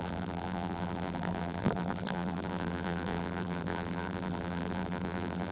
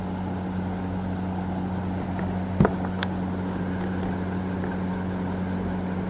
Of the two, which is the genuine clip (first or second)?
second